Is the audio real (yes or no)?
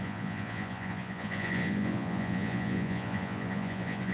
no